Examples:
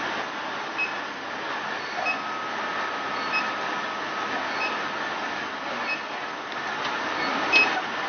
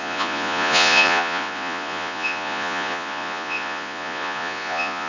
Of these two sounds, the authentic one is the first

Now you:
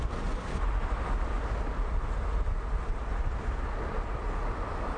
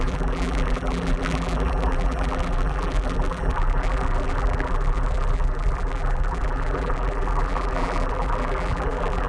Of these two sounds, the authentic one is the first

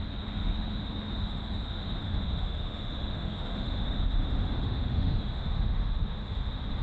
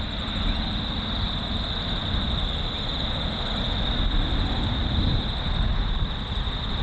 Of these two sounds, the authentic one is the second